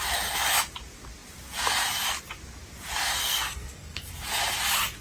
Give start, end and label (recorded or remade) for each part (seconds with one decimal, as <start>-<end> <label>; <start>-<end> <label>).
0.0-3.2 recorded; 3.2-4.1 remade; 4.1-5.0 recorded